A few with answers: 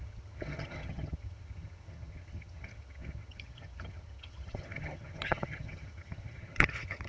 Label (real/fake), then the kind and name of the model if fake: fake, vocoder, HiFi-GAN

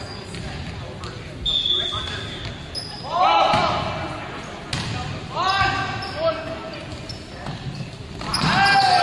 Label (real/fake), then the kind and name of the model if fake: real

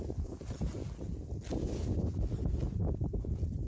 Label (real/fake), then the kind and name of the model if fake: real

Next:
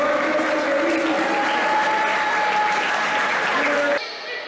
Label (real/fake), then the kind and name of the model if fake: real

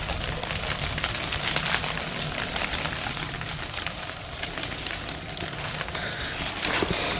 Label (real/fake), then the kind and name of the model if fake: real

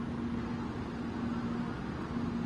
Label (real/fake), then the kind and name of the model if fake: real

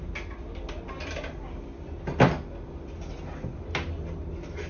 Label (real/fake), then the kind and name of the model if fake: real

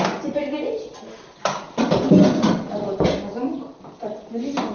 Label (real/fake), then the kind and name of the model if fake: real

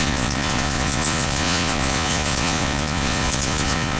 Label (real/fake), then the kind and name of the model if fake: fake, vocoder, Vocos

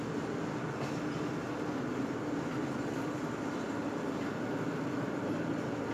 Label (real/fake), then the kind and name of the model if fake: real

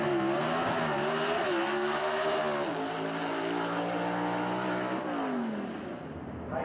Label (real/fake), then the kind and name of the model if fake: real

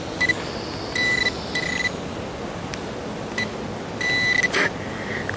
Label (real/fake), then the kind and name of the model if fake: real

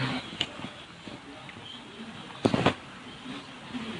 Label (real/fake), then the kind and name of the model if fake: real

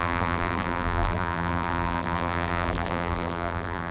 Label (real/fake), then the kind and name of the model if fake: fake, vocoder, BigVGAN v2